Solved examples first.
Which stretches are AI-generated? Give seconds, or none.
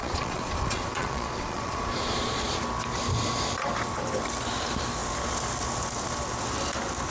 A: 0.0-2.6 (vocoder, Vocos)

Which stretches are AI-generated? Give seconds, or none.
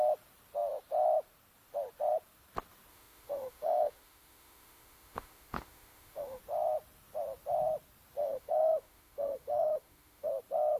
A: 2.9-6.4 (autoencoder, DAC-VAE); 8.2-10.3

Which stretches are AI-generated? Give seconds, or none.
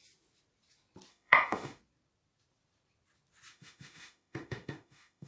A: 1.1-1.8 (autoencoder, DAC-VAE); 3.5-5.3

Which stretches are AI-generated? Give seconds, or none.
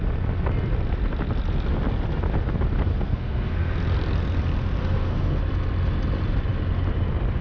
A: 2.9-3.7 (codec, SNAC); 4.8-5.4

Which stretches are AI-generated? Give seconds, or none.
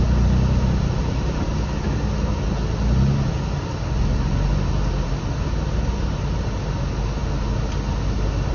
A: none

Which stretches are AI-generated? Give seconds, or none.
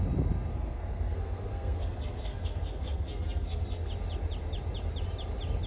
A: 0.5-3.9 (codec, SNAC)